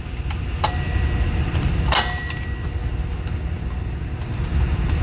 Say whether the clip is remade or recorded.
recorded